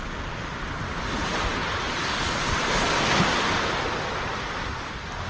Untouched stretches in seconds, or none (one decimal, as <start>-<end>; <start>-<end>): 0.0-5.3